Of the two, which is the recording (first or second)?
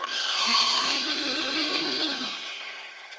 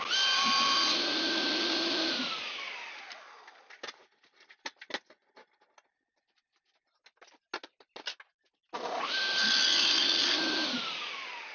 second